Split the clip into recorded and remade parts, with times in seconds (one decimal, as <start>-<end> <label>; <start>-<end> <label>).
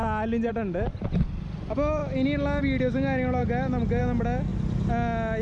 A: 0.0-5.4 recorded